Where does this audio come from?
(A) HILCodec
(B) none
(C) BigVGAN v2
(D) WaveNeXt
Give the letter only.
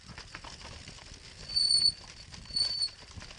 C